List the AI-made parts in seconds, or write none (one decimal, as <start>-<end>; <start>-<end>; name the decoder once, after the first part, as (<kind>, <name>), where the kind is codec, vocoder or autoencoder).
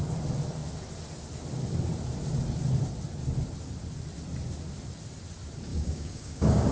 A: 5.7-6.7 (codec, DAC)